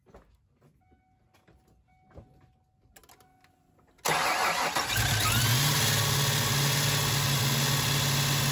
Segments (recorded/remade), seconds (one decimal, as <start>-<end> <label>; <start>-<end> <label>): 0.0-8.5 recorded